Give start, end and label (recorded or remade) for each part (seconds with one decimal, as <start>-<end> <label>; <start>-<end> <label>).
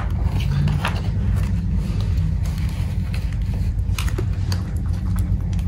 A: 0.0-0.8 recorded; 0.8-2.2 remade; 2.2-5.7 recorded